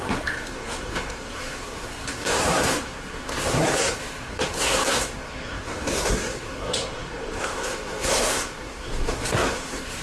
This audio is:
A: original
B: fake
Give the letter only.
B